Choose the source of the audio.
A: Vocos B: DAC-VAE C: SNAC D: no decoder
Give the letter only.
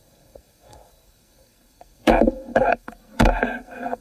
C